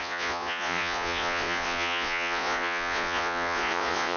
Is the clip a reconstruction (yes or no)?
yes